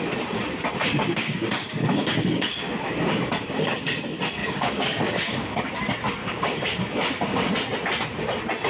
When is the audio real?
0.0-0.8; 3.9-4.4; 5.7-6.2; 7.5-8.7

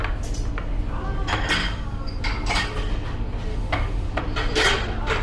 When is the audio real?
0.0-1.6; 2.2-3.5; 4.2-5.2

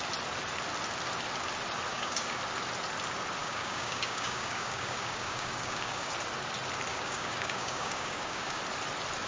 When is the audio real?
0.0-1.9; 2.4-3.4; 6.1-6.9; 8.6-9.3